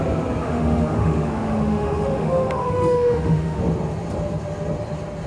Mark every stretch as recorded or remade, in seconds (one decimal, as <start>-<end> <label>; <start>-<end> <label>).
0.0-0.4 recorded; 0.4-3.6 remade; 3.6-5.3 recorded